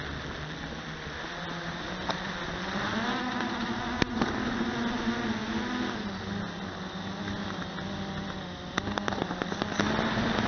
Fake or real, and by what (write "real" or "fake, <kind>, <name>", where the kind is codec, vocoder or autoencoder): real